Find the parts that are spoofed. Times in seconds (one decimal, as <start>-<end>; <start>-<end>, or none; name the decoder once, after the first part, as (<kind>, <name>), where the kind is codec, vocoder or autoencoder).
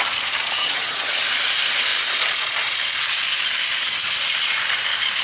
0.6-1.2 (vocoder, HiFi-GAN)